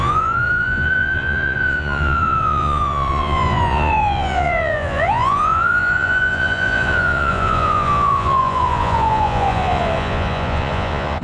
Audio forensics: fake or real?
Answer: fake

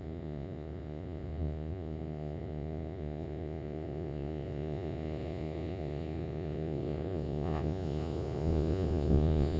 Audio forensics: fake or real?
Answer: fake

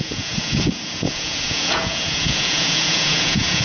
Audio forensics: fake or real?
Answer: fake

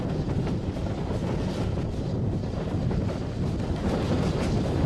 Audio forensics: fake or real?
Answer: real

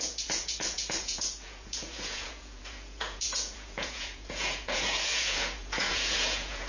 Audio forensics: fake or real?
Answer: fake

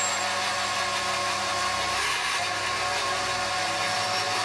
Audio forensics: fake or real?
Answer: real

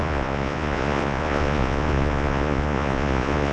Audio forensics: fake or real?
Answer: fake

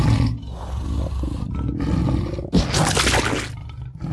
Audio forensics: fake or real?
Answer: real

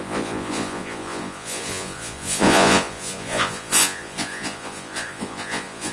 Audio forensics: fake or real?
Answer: fake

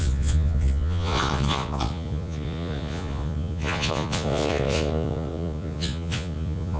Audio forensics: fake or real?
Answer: fake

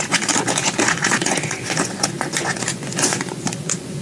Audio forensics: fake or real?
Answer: fake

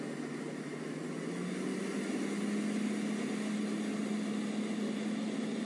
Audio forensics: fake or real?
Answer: real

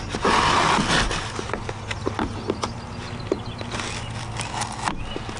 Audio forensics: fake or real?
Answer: real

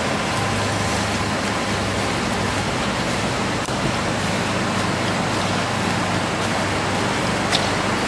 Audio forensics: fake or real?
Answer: real